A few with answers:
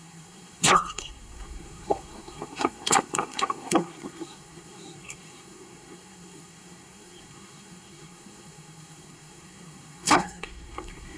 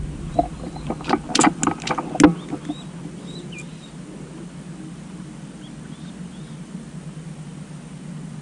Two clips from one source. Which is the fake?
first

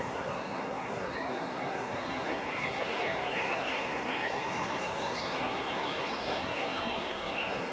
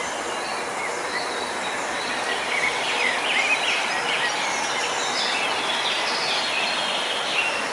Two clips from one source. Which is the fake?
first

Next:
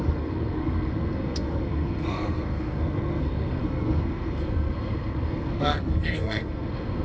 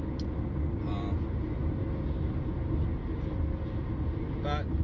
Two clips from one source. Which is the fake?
first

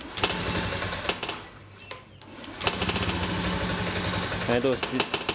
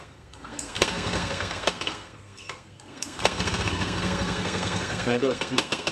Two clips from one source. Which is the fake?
second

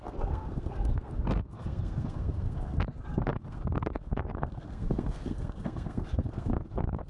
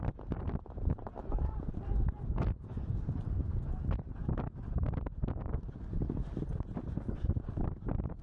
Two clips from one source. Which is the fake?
first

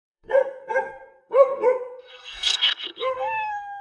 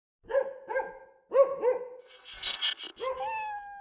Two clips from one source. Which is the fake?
first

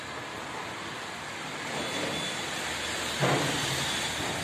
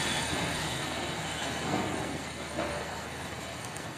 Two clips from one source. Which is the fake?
second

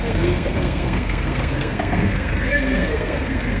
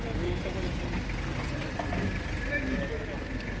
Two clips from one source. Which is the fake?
first